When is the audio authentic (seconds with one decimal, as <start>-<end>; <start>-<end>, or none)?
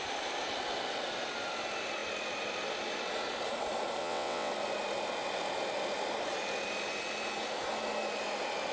0.0-4.0; 4.5-8.7